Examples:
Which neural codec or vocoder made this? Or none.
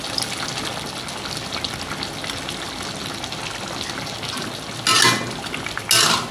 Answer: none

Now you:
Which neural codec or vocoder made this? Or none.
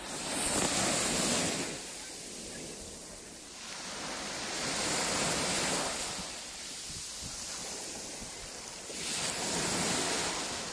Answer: none